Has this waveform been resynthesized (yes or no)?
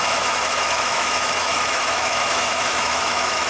yes